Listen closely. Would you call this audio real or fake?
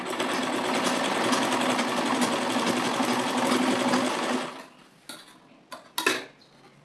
real